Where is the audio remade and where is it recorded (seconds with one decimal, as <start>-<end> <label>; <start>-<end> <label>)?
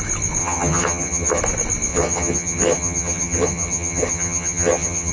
0.0-0.4 recorded; 0.4-1.4 remade; 1.4-1.9 recorded; 1.9-5.1 remade